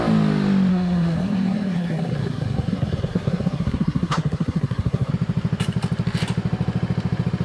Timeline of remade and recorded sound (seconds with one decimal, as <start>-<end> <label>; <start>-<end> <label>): 0.0-0.7 recorded; 0.7-5.1 remade; 5.1-7.4 recorded